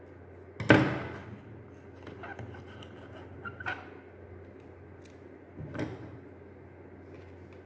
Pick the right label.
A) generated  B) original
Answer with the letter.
B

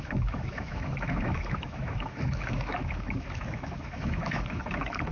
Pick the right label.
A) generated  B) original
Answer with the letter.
A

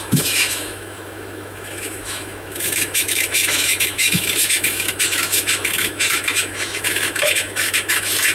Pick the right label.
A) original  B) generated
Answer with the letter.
B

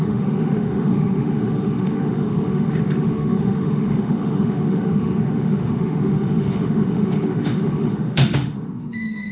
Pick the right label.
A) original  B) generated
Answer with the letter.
B